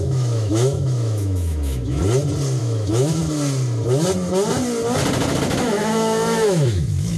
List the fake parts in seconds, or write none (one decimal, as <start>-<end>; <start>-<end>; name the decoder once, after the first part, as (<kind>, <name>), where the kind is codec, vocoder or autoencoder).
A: 0.0-2.0 (autoencoder, DAC-VAE); 2.6-3.2; 5.6-7.2

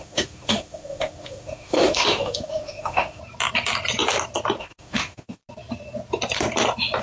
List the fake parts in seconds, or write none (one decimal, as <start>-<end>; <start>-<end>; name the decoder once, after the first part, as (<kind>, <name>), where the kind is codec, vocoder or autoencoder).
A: 0.0-3.2 (autoencoder, DAC-VAE); 4.6-5.4